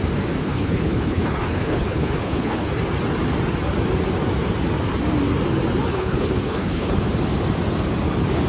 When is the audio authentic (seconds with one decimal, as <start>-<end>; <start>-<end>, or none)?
0.0-0.4; 2.7-5.9; 7.0-8.5